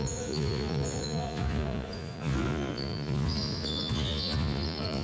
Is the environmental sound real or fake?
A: fake